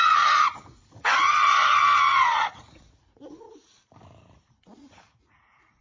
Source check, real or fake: fake